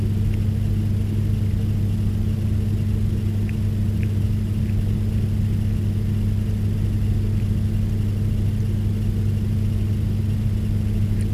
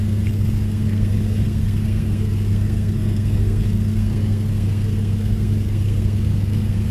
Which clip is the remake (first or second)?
second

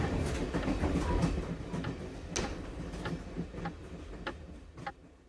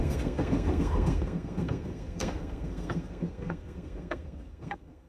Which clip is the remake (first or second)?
second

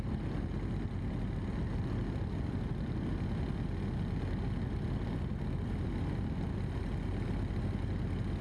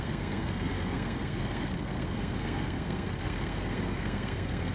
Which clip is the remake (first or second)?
second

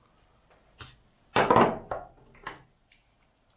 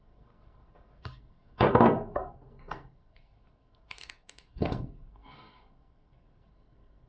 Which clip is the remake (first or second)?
second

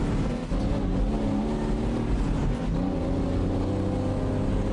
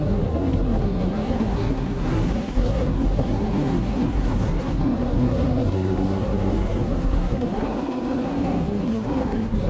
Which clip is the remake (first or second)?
second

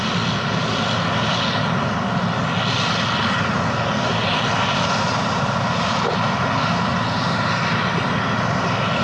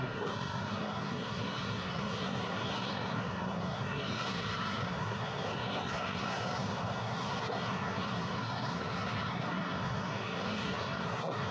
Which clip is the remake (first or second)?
second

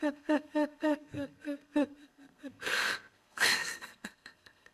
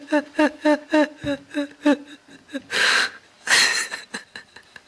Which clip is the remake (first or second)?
first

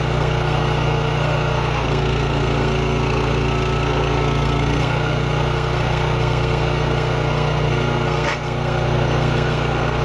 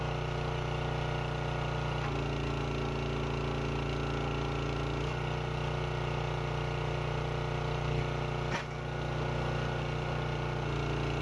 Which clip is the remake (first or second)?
first